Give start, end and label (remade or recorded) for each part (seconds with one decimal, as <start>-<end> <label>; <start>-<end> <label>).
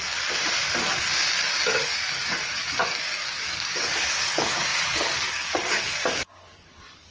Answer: 0.0-1.4 recorded; 1.4-7.1 remade